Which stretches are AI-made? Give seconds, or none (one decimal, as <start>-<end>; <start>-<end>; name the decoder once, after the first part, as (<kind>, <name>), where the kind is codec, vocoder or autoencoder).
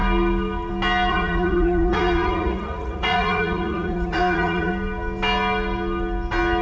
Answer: 1.1-4.7 (vocoder, Vocos)